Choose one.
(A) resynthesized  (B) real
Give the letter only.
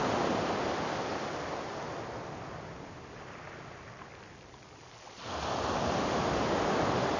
B